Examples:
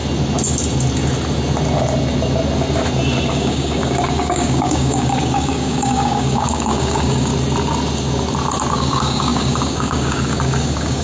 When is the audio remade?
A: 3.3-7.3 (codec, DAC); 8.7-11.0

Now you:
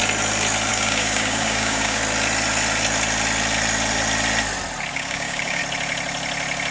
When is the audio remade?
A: 0.7-2.0 (codec, DAC); 4.9-5.6

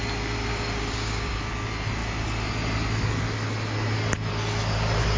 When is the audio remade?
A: 0.5-1.4 (codec, DAC)

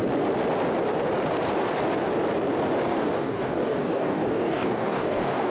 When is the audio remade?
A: 2.9-5.5 (codec, DAC)

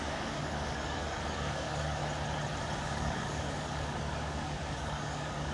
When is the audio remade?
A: 0.0-2.0 (codec, DAC); 2.8-5.5

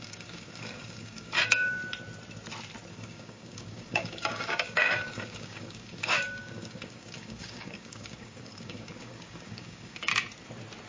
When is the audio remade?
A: 0.0-1.8 (codec, DAC); 2.9-10.1

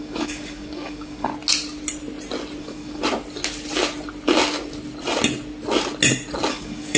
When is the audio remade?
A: 0.0-1.3 (codec, DAC); 2.6-3.0; 6.5-7.0